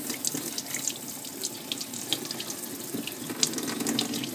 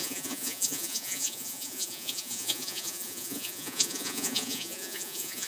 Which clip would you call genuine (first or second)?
first